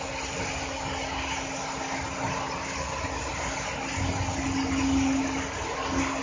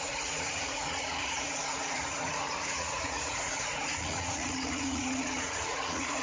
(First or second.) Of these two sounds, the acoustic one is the first